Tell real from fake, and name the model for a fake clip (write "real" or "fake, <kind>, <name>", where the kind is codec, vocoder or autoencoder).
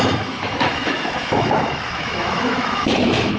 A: fake, autoencoder, DAC-VAE